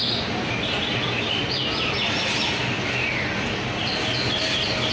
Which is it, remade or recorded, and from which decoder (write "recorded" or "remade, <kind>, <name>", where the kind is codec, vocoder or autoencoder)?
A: recorded